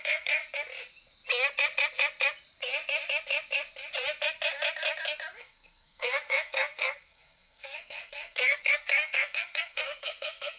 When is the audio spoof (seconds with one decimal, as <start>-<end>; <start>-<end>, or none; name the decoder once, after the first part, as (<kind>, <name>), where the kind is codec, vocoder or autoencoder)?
0.0-0.4 (codec, SNAC); 5.4-10.6